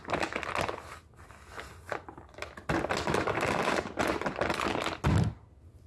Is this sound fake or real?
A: real